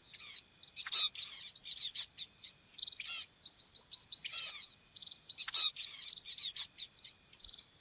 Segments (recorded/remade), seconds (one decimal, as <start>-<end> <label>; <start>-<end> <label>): 0.0-1.6 recorded; 1.6-3.1 remade; 3.1-5.0 recorded; 5.0-7.3 remade; 7.3-7.8 recorded